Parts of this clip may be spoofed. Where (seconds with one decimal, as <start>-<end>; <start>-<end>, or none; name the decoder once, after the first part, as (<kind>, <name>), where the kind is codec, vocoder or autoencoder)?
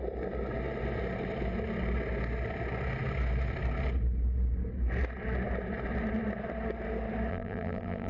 7.3-8.1 (vocoder, BigVGAN v2)